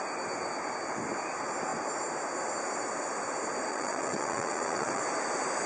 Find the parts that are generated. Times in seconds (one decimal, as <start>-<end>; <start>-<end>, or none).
3.7-5.0